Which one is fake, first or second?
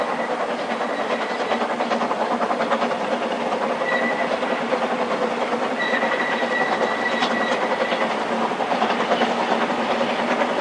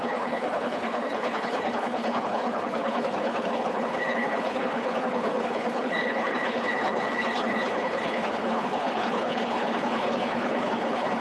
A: second